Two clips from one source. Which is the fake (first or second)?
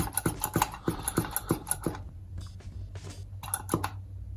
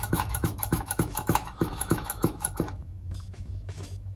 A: second